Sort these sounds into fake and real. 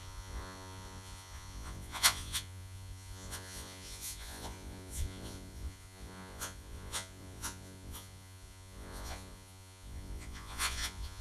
fake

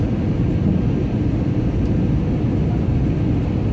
real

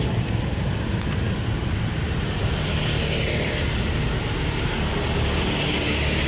real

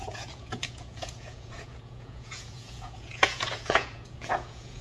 fake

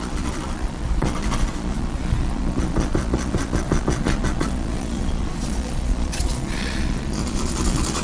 fake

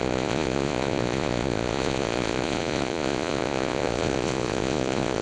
fake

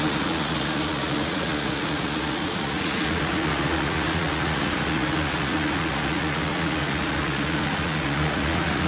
fake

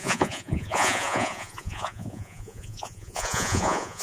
fake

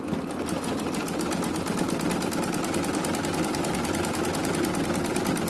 real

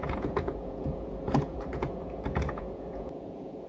fake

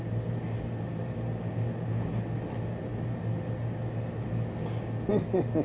real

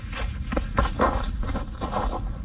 fake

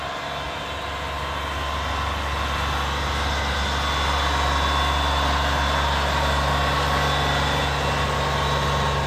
real